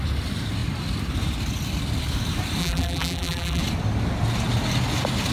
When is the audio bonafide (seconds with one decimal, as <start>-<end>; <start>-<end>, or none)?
0.0-2.6; 3.6-5.3